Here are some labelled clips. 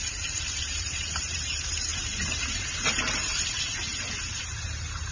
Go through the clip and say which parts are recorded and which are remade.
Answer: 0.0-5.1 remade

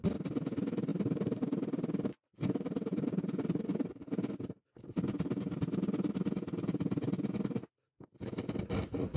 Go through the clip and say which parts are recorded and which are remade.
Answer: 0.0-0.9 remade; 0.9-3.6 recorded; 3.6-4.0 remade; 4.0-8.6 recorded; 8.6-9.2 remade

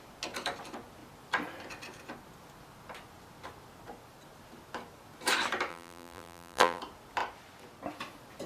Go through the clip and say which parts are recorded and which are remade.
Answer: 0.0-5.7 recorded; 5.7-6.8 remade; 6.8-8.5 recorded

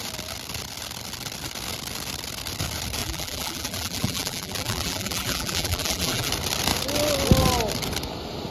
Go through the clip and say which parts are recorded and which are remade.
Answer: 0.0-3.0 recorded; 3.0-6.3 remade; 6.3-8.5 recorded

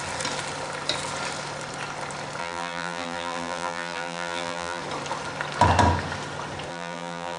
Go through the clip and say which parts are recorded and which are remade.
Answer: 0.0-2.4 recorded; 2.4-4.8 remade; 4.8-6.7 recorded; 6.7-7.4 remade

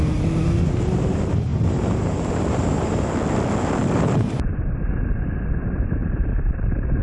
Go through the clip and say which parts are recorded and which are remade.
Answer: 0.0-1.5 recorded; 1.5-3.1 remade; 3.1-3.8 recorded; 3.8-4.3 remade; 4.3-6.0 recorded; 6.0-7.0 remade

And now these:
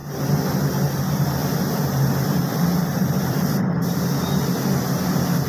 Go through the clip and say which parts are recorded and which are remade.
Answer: 0.0-1.4 recorded; 1.4-4.0 remade; 4.0-5.5 recorded